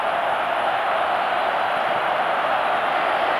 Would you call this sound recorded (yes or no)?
no